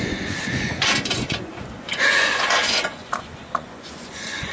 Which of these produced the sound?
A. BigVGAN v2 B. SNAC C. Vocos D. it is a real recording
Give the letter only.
C